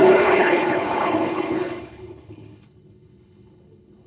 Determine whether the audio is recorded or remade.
remade